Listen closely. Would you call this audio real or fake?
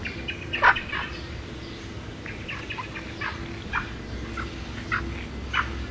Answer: real